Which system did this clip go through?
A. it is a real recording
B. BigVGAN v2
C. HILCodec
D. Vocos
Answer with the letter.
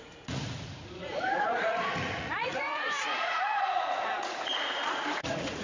D